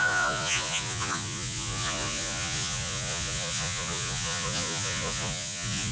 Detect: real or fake fake